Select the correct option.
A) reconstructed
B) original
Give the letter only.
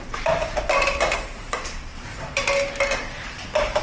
B